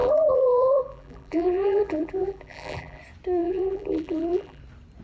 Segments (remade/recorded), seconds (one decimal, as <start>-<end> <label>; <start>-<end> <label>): 0.0-3.0 remade; 3.0-3.4 recorded; 3.4-4.6 remade; 4.6-5.0 recorded